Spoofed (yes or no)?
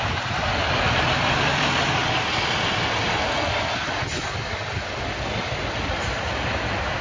no